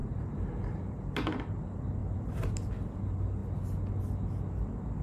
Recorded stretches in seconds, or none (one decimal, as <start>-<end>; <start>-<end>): 1.0-2.0; 2.5-5.0